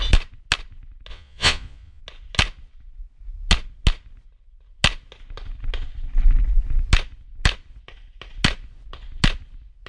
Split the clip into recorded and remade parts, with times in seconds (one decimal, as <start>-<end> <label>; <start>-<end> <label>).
0.0-1.1 recorded; 1.1-2.0 remade; 2.0-9.9 recorded